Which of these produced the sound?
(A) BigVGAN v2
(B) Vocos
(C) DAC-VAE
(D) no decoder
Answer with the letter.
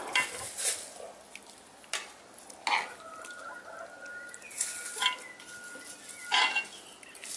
D